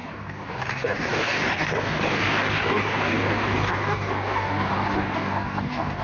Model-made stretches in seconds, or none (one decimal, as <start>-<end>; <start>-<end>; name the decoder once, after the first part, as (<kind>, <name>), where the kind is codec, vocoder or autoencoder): 0.0-6.0 (codec, DAC)